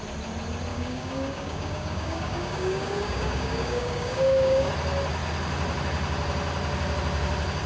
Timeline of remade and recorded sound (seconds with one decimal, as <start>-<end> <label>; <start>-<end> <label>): 0.0-0.7 recorded; 0.7-4.7 remade; 4.7-7.7 recorded